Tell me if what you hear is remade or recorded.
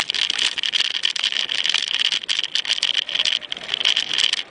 recorded